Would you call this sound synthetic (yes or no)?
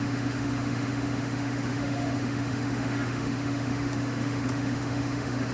yes